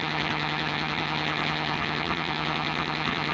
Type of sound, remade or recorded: remade